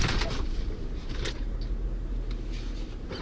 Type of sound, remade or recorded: recorded